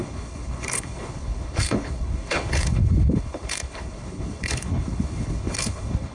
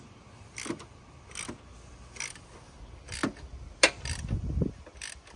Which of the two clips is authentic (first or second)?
second